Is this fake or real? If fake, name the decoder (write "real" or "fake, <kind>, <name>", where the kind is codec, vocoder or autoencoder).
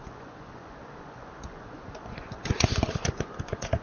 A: fake, vocoder, Vocos